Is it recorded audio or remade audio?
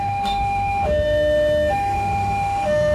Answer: remade